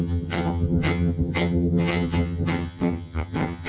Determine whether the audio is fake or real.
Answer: fake